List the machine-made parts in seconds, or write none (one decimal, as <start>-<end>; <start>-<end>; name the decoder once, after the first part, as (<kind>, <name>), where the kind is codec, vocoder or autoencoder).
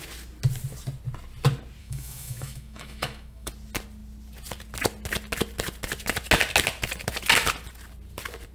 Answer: 1.8-3.5 (autoencoder, DAC-VAE)